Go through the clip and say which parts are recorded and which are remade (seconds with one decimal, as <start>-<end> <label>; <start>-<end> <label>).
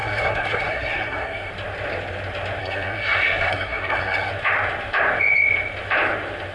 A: 0.0-1.5 remade; 1.5-2.6 recorded; 2.6-4.3 remade; 4.3-6.5 recorded